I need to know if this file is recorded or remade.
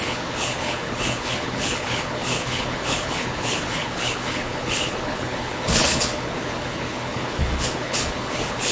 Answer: remade